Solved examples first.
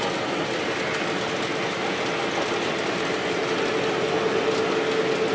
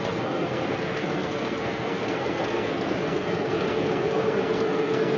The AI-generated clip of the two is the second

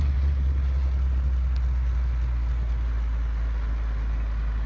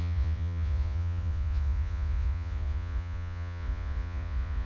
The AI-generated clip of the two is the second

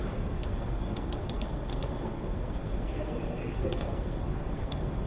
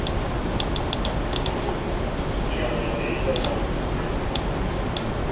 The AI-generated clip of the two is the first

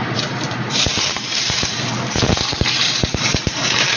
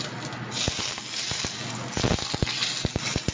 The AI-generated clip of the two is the first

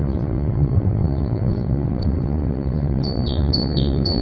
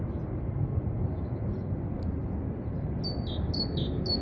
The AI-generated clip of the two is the first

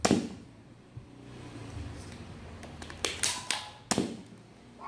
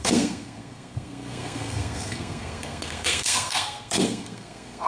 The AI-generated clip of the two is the second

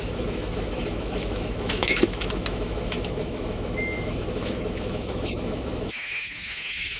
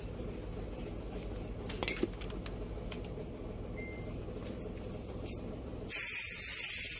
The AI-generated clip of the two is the first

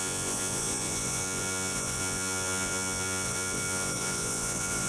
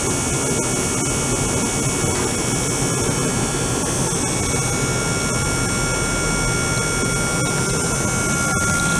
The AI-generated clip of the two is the first